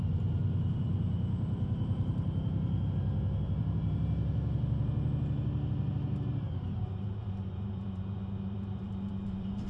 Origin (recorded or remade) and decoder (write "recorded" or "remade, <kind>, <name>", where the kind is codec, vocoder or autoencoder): remade, vocoder, BigVGAN v2